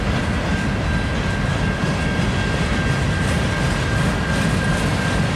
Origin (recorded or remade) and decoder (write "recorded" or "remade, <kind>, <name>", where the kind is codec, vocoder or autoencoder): recorded